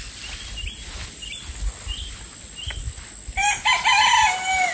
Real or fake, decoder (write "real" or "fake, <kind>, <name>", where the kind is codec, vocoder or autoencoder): real